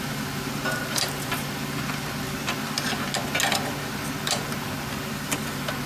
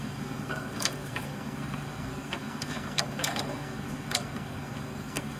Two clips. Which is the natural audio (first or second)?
first